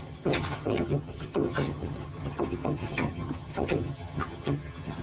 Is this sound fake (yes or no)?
yes